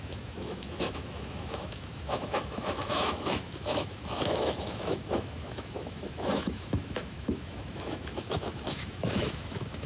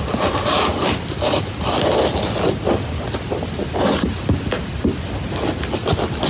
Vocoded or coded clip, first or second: first